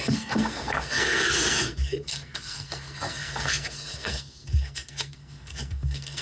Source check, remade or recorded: remade